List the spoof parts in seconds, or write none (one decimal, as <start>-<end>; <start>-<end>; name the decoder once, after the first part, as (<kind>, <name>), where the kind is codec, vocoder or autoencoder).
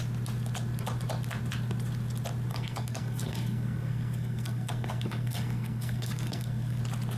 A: 2.5-6.8 (codec, SNAC)